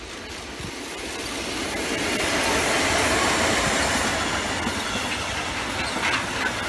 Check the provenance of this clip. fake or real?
real